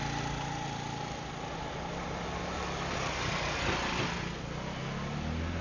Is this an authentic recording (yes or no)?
yes